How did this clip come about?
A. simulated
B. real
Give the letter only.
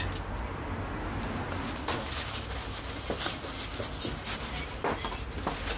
B